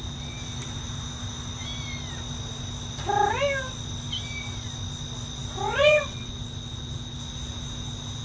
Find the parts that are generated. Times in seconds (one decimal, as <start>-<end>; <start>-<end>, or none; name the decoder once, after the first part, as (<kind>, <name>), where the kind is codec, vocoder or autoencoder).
5.8-6.3 (vocoder, WaveNeXt)